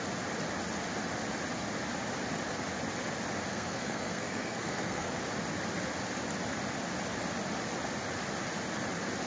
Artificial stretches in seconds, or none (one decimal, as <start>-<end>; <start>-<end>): 3.5-5.1